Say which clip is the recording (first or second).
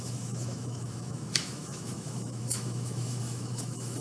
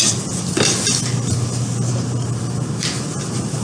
second